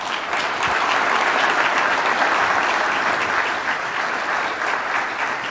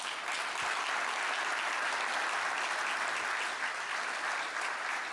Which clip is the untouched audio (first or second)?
second